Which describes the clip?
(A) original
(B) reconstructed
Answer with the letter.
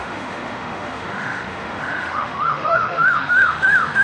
B